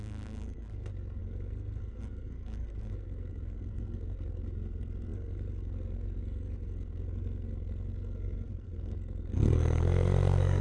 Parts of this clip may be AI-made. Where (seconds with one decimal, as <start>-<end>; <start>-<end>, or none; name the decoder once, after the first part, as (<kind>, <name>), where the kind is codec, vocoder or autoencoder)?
0.0-10.6 (codec, SNAC)